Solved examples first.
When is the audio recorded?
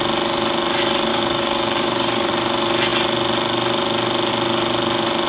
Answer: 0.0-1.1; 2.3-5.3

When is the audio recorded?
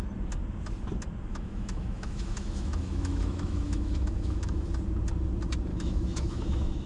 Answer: 0.0-1.3; 4.7-5.7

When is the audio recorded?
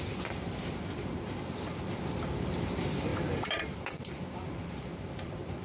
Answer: none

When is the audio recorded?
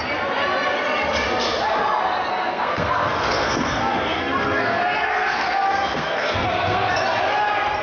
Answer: 0.0-2.3; 7.0-7.8